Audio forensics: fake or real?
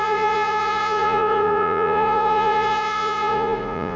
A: fake